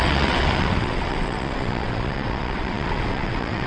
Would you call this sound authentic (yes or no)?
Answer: no